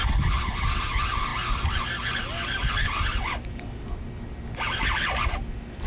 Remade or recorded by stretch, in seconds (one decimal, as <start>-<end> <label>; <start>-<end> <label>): 0.0-5.9 recorded